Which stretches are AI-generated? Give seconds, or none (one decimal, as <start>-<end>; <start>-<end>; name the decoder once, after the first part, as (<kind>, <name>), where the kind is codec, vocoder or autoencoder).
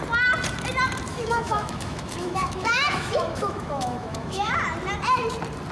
1.1-4.5 (autoencoder, DAC-VAE)